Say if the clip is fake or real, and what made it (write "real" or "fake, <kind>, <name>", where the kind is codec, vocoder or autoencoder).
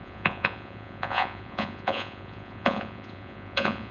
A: fake, vocoder, Vocos